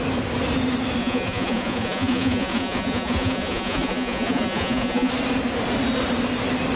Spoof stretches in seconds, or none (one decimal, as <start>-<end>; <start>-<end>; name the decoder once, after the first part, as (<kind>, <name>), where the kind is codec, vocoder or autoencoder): 1.0-5.1 (vocoder, Vocos)